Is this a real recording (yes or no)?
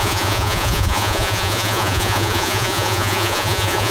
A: no